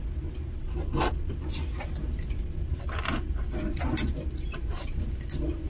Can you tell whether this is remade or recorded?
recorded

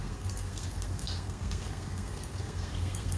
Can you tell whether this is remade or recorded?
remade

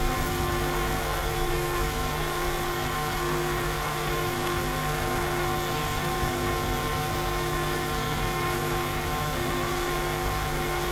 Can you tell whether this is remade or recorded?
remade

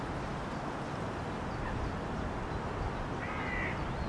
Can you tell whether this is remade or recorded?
recorded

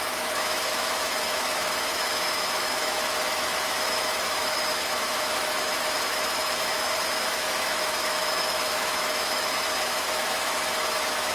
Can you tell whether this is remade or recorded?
remade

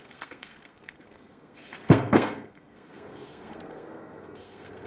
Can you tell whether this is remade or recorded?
remade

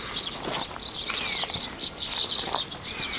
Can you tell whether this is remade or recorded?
recorded